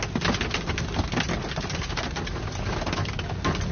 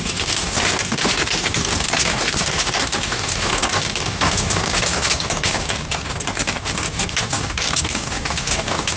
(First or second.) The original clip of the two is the first